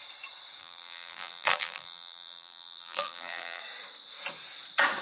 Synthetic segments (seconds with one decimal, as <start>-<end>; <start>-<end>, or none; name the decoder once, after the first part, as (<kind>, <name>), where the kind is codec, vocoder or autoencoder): 0.6-3.6 (vocoder, BigVGAN v2)